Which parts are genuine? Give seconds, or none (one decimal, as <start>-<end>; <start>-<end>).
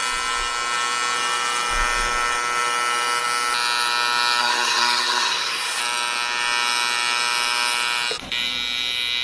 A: 0.0-4.4; 5.8-9.2